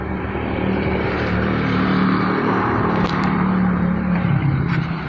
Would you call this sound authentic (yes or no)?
no